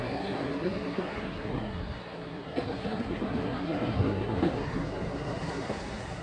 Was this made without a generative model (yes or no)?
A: no